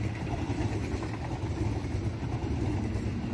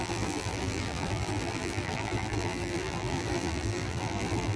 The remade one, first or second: second